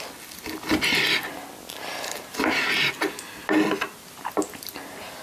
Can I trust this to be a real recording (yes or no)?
yes